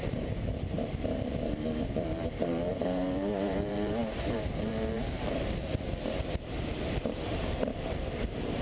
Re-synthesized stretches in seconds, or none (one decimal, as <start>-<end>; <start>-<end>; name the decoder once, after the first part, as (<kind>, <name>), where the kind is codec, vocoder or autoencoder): 0.0-8.6 (vocoder, BigVGAN v2)

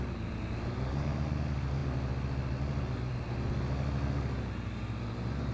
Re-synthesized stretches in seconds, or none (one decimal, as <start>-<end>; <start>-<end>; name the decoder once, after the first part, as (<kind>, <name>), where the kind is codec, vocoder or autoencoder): none